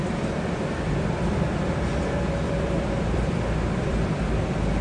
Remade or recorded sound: remade